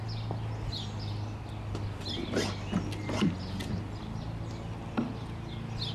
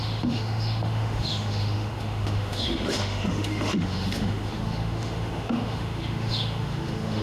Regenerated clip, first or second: second